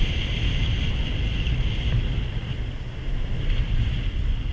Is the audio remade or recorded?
recorded